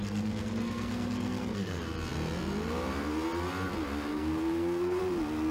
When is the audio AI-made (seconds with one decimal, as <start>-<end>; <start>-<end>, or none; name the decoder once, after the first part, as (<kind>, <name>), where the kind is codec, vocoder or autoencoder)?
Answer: 0.0-1.8 (codec, SNAC); 4.1-5.0